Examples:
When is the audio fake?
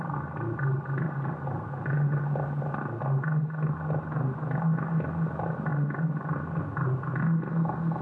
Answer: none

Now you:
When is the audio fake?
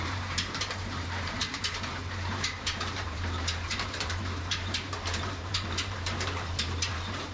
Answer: 0.0-7.3 (vocoder, BigVGAN v2)